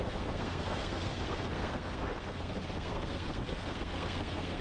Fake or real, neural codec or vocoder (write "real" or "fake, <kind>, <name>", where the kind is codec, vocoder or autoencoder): fake, codec, SNAC